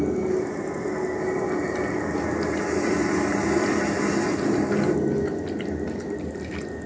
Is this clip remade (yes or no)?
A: no